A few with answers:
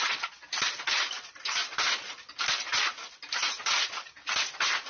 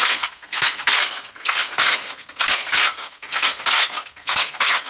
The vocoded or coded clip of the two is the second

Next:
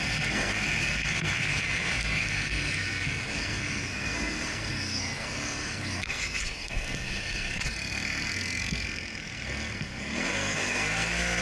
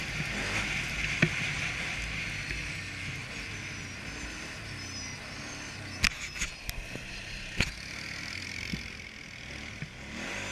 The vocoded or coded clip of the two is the first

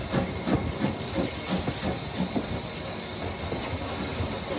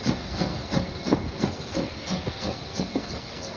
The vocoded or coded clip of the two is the second